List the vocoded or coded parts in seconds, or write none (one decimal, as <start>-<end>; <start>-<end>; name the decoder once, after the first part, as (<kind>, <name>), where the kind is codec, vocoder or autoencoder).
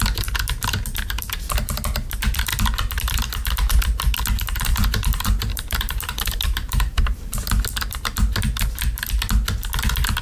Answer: 4.7-7.4 (vocoder, BigVGAN v2)